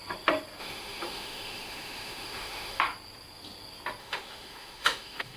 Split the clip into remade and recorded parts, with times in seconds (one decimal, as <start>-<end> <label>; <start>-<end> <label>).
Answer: 0.0-0.6 recorded; 0.6-2.8 remade; 2.8-4.0 recorded; 4.0-5.4 remade